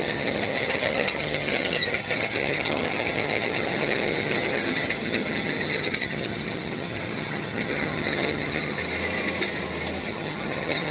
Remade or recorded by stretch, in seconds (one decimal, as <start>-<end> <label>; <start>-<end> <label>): 0.0-8.8 remade; 8.8-10.0 recorded; 10.0-10.9 remade